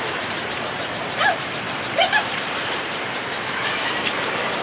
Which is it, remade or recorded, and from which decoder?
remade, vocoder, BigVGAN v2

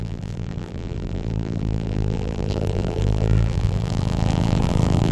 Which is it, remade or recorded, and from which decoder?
remade, vocoder, BigVGAN v2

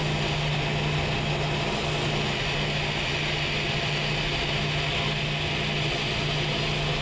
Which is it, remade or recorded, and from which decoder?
recorded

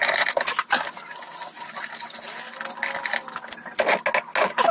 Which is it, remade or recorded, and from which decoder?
recorded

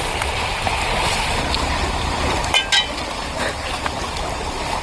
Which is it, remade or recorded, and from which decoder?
recorded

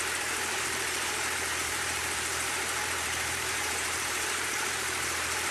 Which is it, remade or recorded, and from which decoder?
remade, vocoder, BigVGAN v2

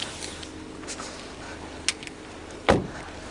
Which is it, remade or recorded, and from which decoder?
recorded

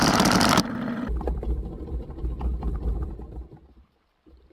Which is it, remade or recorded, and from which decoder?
remade, vocoder, BigVGAN v2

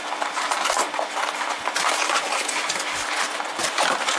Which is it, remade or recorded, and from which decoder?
recorded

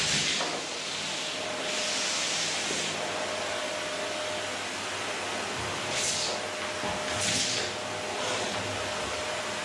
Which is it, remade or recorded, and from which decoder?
recorded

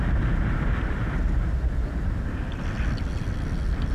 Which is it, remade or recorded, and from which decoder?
recorded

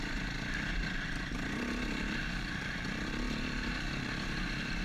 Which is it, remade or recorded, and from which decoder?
remade, vocoder, BigVGAN v2